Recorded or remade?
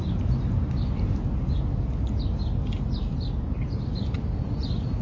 recorded